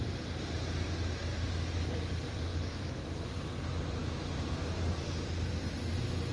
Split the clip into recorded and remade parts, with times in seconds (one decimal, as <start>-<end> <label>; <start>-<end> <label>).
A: 0.0-2.5 recorded; 2.5-3.3 remade; 3.3-4.0 recorded; 4.0-4.6 remade; 4.6-6.3 recorded